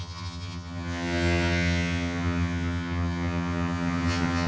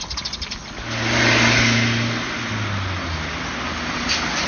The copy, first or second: first